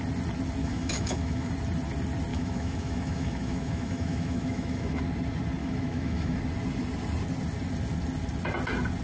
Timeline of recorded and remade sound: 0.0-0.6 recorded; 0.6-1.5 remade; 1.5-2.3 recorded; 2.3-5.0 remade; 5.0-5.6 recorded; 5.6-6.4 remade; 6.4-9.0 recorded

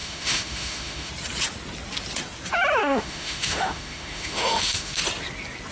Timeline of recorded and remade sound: 0.0-1.1 remade; 1.1-2.8 recorded; 2.8-5.0 remade; 5.0-5.7 recorded

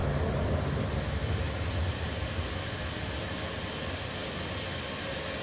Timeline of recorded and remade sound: 0.0-5.4 recorded

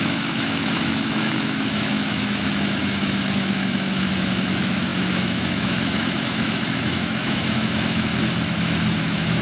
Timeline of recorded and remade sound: 0.0-8.1 remade; 8.1-9.0 recorded; 9.0-9.4 remade

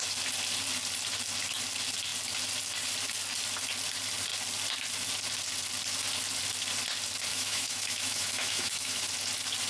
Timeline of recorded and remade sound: 0.0-7.3 recorded; 7.3-9.0 remade; 9.0-9.7 recorded

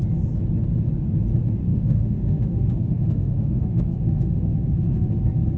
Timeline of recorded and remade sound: 0.0-1.7 recorded; 1.7-5.1 remade; 5.1-5.6 recorded

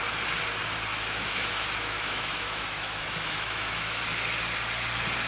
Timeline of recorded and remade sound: 0.0-0.9 recorded; 0.9-4.0 remade; 4.0-5.3 recorded